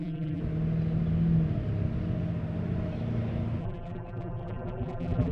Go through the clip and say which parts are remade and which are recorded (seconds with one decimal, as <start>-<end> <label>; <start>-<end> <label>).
0.0-0.4 remade; 0.4-3.6 recorded; 3.6-5.3 remade